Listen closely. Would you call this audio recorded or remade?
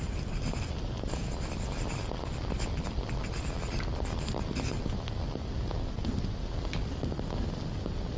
recorded